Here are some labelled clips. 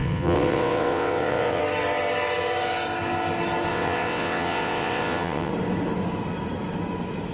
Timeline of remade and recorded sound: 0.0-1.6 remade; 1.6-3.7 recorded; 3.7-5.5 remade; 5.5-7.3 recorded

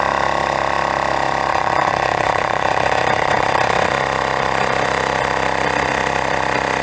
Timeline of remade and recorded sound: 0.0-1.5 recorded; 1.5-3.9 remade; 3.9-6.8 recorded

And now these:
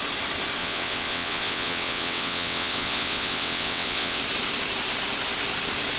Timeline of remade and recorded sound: 0.0-0.6 recorded; 0.6-4.2 remade; 4.2-6.0 recorded

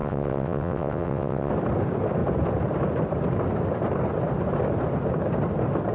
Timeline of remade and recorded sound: 0.0-1.5 remade; 1.5-5.9 recorded

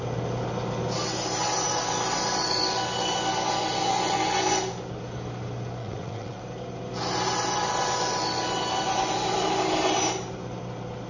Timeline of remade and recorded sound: 0.0-5.8 recorded; 5.8-6.4 remade; 6.4-11.1 recorded